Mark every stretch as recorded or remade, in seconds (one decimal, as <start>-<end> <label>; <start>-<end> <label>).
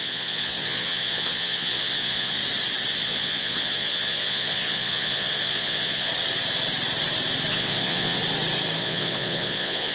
0.0-2.4 remade; 2.4-2.9 recorded; 2.9-6.1 remade; 6.1-7.5 recorded; 7.5-8.2 remade; 8.2-8.8 recorded; 8.8-9.9 remade